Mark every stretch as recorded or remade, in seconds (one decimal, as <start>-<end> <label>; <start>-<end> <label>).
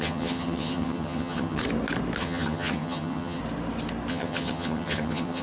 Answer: 0.0-1.6 remade; 1.6-2.2 recorded; 2.2-3.4 remade; 3.4-4.1 recorded; 4.1-5.4 remade